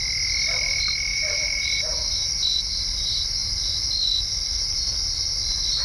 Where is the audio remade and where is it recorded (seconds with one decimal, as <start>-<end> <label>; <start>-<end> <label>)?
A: 0.0-1.1 recorded; 1.1-2.0 remade; 2.0-5.8 recorded